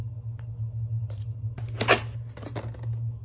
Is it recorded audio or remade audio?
recorded